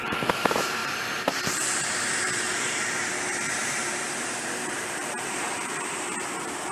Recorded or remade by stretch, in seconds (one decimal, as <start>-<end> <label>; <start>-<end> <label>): 0.0-6.7 remade